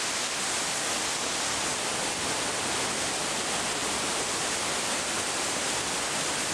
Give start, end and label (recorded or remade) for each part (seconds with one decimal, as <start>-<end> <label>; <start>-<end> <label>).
0.0-3.8 recorded; 3.8-4.7 remade; 4.7-6.5 recorded